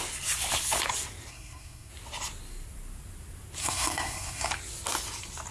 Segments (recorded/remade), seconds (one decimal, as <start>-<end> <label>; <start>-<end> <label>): 0.0-1.3 recorded; 1.3-1.9 remade; 1.9-3.6 recorded; 3.6-4.5 remade; 4.5-5.5 recorded